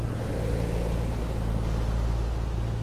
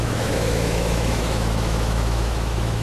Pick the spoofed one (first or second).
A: second